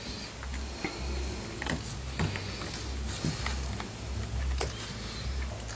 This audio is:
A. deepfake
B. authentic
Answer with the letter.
B